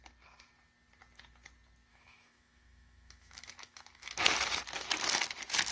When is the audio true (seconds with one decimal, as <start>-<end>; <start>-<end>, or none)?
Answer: 0.0-1.9; 4.3-5.7